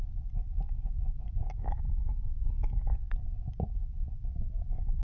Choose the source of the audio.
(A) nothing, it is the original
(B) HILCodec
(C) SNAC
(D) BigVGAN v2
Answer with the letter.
A